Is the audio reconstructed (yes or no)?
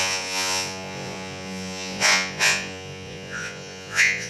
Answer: yes